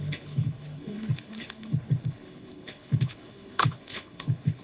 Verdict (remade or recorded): remade